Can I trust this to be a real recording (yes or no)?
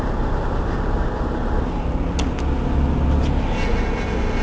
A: yes